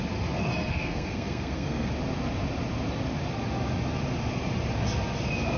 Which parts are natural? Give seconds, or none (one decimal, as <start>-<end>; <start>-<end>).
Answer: 0.0-0.4; 1.9-5.6